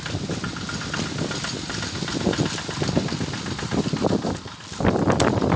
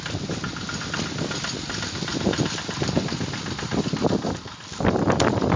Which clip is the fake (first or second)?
first